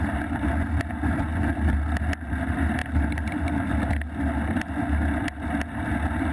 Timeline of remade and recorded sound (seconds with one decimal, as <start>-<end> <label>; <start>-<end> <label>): 0.0-6.3 recorded